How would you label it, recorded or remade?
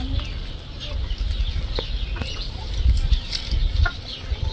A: recorded